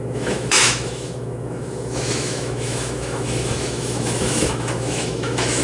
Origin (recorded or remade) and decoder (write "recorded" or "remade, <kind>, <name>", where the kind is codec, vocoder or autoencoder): remade, autoencoder, DAC-VAE